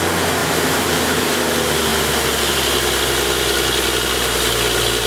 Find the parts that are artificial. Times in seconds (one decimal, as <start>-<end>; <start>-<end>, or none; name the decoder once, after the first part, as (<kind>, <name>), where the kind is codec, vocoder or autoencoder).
0.4-1.4 (vocoder, BigVGAN v2)